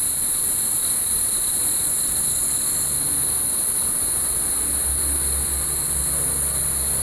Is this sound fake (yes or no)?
no